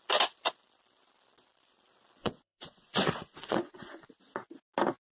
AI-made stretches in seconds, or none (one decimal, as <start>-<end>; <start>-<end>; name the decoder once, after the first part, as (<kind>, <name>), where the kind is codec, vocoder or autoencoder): 2.2-4.1 (vocoder, Vocos)